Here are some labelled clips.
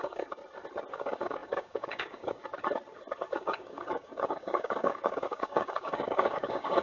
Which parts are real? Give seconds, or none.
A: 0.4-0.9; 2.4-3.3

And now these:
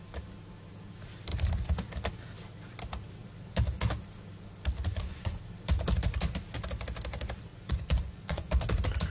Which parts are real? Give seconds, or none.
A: 0.0-4.9; 5.4-7.5; 8.5-9.1

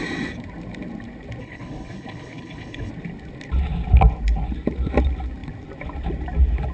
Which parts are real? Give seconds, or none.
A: 0.0-1.4; 2.9-6.7

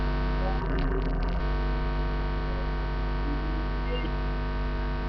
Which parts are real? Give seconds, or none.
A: 0.0-0.6; 1.4-5.1

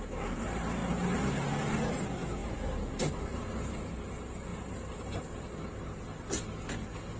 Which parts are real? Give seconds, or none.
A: 0.0-7.2

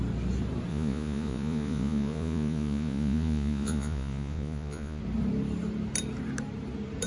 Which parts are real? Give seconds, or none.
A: 0.0-0.7; 5.0-7.1